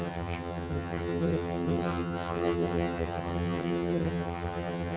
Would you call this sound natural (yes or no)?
no